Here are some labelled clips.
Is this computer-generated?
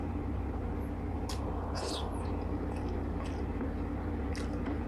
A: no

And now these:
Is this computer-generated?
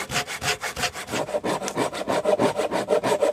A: no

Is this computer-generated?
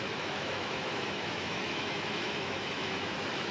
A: yes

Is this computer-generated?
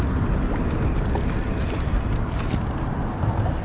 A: no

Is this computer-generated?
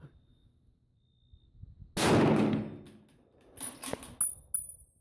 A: no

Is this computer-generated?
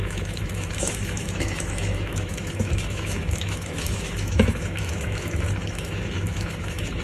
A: yes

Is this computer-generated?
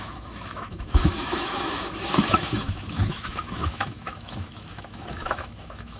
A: yes